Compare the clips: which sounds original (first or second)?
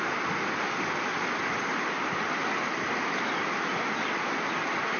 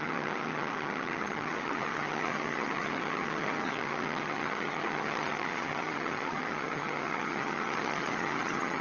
first